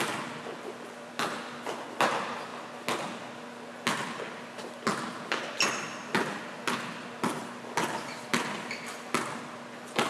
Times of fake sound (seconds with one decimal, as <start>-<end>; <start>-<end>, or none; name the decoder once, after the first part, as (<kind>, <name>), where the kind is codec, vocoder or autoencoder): none

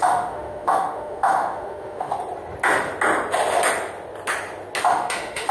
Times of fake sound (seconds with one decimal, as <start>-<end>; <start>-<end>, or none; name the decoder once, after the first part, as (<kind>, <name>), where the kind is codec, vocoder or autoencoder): 0.0-2.1 (autoencoder, DAC-VAE); 4.8-5.5

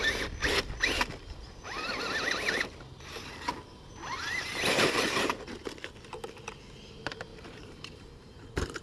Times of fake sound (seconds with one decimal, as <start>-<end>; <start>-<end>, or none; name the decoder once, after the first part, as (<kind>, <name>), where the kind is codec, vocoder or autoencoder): 1.5-5.6 (vocoder, BigVGAN v2); 7.3-8.8

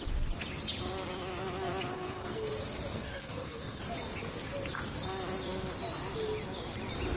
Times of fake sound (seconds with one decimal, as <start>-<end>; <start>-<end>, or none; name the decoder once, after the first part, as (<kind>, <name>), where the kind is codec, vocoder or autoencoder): 1.9-2.5 (codec, SNAC); 2.9-3.8

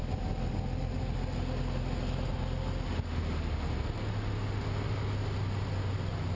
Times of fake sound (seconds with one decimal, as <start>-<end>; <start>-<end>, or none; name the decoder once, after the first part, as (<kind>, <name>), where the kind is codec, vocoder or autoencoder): none

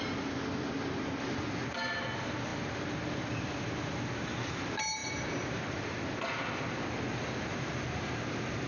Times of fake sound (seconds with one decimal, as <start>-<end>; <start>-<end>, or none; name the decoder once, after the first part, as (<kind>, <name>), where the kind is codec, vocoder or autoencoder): 2.5-3.3 (vocoder, BigVGAN v2); 5.0-7.1

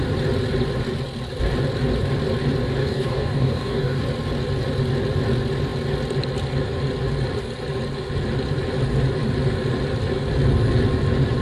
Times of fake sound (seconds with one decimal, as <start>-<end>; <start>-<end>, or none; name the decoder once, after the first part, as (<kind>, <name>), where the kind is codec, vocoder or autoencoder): 2.8-4.0 (codec, DAC)